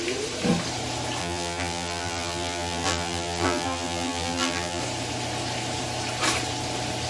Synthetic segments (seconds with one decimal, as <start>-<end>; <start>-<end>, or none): 1.2-4.8